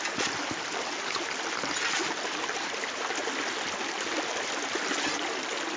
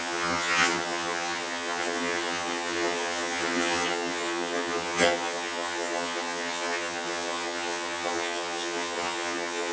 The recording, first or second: first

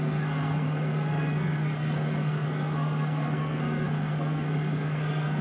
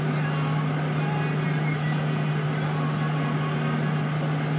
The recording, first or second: second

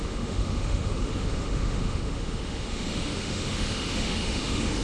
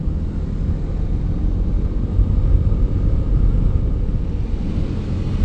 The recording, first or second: second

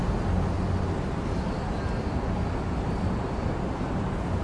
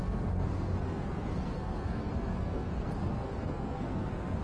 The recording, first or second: first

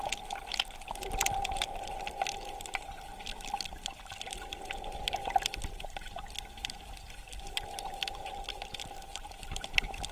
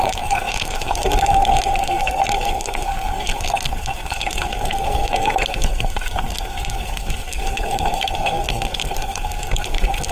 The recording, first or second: first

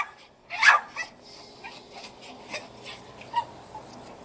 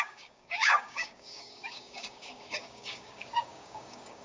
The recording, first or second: first